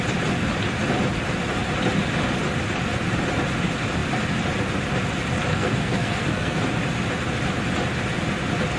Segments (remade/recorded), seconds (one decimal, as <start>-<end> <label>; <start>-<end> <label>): 0.0-5.5 recorded; 5.5-6.6 remade; 6.6-8.8 recorded